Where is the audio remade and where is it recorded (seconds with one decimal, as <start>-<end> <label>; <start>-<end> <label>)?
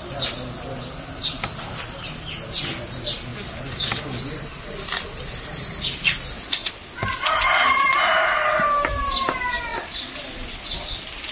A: 0.0-11.3 recorded